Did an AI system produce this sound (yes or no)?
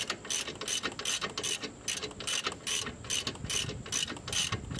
no